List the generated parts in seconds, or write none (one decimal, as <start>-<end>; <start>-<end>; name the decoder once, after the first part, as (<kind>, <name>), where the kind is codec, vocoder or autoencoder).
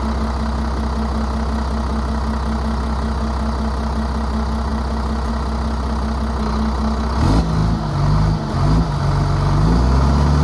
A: none